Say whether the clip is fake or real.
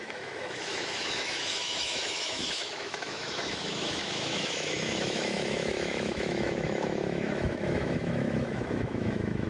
fake